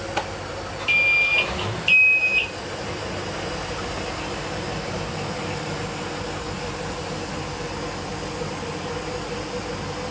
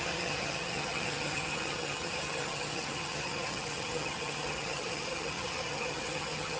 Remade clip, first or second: second